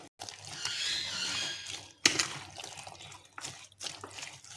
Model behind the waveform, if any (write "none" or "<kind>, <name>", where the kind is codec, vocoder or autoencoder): none